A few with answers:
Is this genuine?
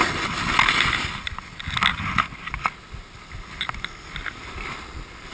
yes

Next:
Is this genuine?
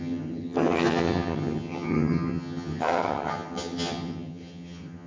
no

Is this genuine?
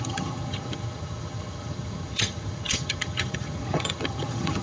no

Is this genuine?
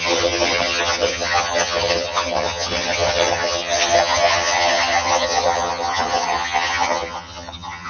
no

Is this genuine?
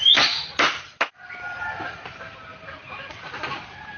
yes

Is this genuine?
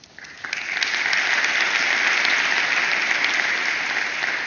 yes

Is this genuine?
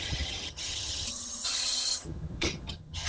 no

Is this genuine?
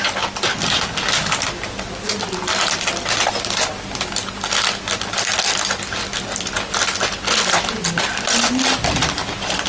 yes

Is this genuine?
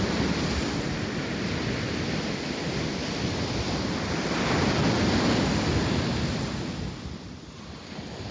yes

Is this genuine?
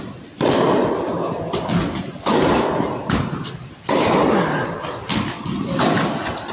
yes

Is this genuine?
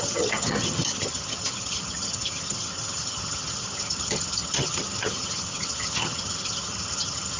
no